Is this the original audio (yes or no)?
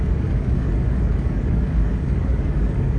no